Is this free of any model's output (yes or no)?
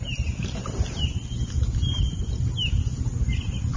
yes